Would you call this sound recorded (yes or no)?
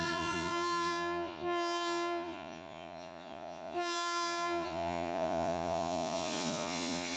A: no